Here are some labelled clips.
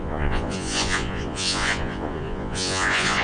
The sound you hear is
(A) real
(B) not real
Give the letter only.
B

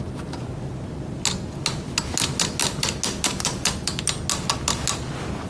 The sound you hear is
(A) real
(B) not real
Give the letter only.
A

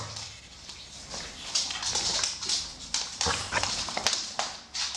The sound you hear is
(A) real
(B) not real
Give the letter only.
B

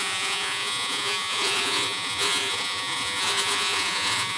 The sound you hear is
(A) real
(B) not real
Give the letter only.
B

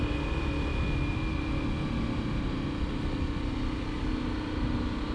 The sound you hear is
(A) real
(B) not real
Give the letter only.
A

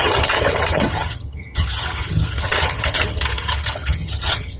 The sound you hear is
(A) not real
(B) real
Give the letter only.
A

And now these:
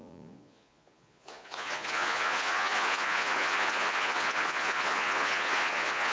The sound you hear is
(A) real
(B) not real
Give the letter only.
B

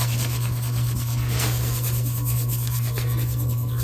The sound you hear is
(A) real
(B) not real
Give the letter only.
B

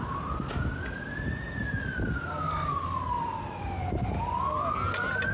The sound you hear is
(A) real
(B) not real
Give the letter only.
A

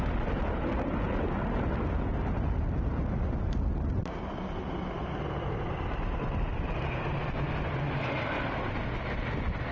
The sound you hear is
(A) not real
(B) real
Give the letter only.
B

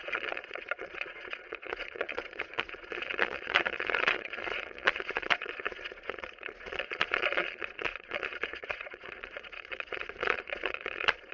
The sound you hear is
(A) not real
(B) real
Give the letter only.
A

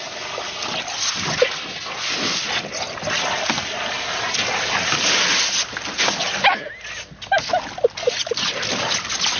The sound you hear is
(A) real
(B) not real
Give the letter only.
A